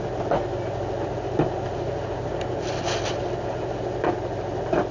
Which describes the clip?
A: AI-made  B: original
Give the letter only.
B